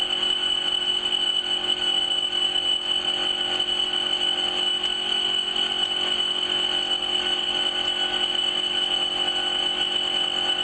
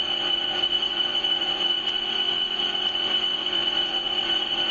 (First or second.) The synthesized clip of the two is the second